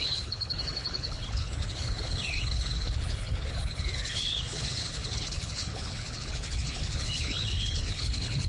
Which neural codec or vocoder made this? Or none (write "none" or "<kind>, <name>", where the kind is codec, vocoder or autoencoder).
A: codec, HILCodec